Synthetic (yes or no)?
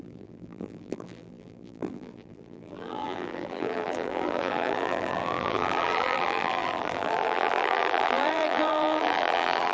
yes